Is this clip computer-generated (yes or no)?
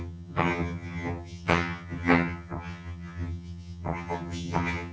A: yes